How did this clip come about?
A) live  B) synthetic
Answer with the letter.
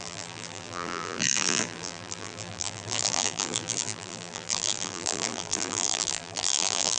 B